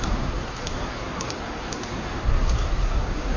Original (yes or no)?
no